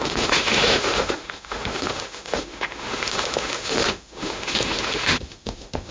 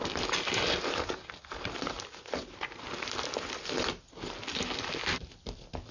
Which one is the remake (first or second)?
first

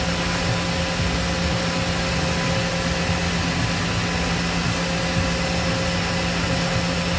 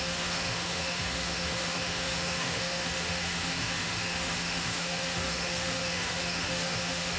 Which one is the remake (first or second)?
second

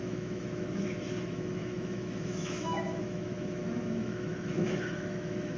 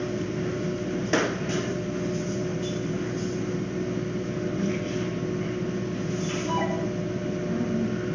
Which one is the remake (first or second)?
first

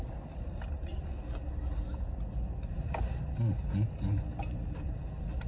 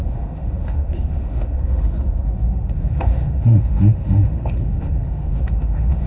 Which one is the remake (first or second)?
second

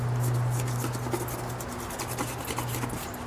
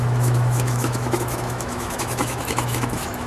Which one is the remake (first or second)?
second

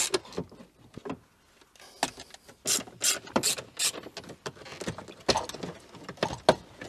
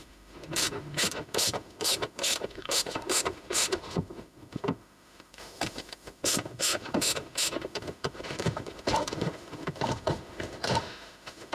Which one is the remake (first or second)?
second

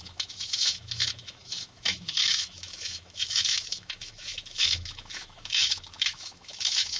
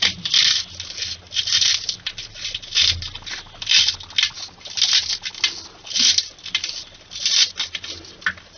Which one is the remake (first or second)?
first